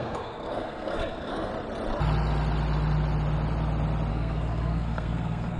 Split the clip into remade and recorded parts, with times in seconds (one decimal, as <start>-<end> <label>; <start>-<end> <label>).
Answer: 0.0-1.5 remade; 1.5-4.1 recorded; 4.1-5.6 remade